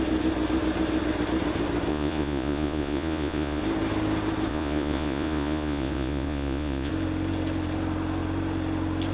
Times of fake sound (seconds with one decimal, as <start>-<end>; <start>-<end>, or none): 1.9-3.6; 4.5-6.9